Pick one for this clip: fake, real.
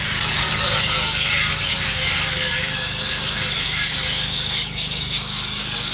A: fake